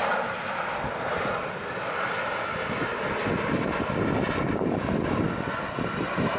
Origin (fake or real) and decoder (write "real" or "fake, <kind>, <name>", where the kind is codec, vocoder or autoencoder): real